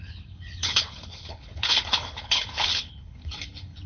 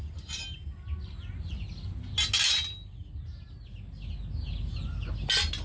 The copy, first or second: first